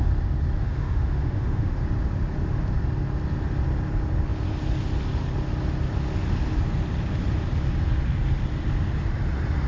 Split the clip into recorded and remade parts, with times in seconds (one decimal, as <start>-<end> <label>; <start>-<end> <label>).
0.0-0.6 recorded; 0.6-1.8 remade; 1.8-9.7 recorded